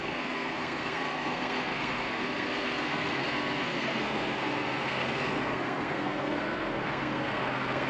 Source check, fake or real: fake